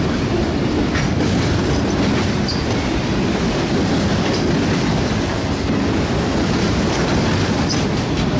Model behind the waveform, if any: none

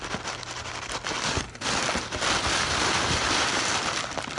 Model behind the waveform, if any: vocoder, BigVGAN v2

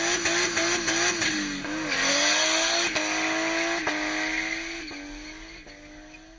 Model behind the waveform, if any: none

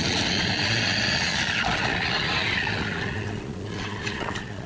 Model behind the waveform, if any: vocoder, Vocos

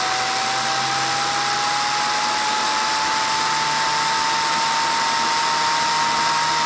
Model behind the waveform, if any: none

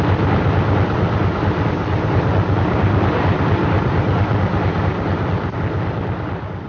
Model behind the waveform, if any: vocoder, BigVGAN v2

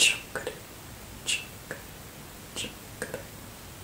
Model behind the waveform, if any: none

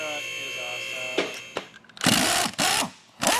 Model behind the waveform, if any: none